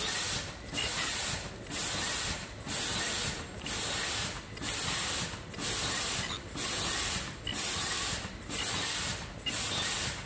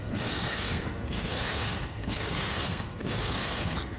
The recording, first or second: first